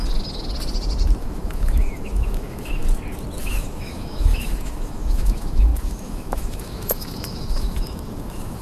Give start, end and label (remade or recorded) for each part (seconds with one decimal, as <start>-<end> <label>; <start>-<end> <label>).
0.0-1.2 recorded; 1.2-2.8 remade; 2.8-3.4 recorded; 3.4-8.6 remade